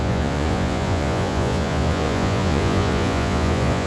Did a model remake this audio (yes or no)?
yes